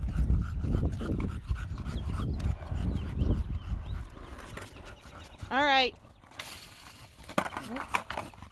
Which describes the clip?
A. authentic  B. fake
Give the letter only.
A